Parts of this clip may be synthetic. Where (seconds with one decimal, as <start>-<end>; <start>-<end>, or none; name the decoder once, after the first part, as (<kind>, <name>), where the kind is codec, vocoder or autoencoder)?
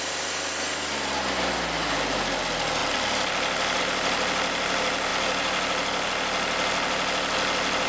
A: none